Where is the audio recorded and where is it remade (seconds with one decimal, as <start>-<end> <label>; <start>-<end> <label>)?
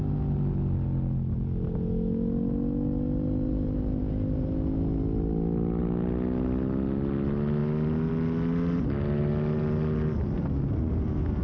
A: 0.0-11.4 recorded